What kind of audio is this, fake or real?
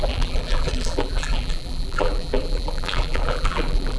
fake